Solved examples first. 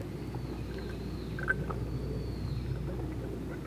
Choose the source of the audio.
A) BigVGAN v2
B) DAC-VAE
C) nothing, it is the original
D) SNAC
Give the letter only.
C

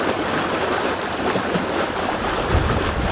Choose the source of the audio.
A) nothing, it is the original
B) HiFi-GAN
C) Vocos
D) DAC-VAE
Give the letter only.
A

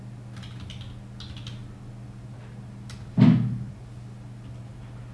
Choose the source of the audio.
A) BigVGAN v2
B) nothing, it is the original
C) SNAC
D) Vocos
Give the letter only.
B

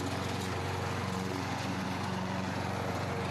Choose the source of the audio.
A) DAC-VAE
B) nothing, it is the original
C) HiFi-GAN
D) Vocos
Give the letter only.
D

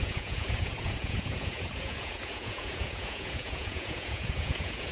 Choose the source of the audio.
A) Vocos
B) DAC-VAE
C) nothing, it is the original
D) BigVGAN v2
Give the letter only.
A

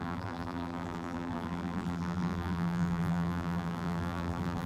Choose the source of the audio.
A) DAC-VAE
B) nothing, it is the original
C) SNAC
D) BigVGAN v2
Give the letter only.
D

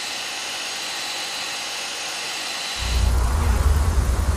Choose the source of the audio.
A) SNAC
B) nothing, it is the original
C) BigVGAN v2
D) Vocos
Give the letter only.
D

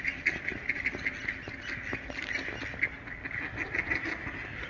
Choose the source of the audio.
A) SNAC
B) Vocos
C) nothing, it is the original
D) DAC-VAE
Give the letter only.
C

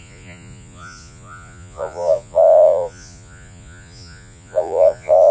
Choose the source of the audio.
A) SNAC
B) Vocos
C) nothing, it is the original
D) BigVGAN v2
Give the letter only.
B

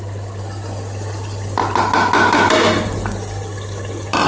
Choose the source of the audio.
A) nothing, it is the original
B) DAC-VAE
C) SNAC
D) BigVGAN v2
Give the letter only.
A